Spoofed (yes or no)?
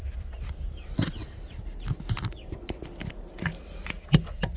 no